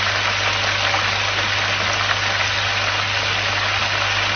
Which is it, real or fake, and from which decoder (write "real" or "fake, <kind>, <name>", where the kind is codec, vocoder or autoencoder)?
real